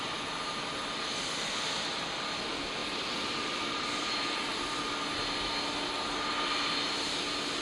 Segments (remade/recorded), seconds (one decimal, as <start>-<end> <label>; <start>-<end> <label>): 0.0-7.6 recorded